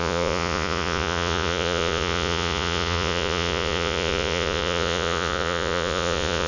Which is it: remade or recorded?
remade